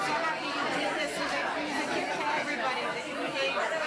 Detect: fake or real real